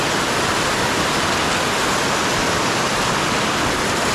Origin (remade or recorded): recorded